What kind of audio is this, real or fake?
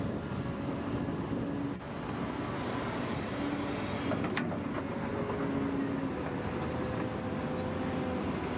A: real